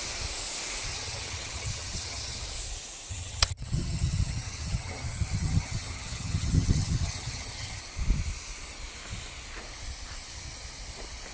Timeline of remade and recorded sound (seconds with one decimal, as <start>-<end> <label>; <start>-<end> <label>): 0.0-0.9 recorded; 0.9-2.4 remade; 2.4-3.1 recorded; 3.1-7.8 remade; 7.8-11.3 recorded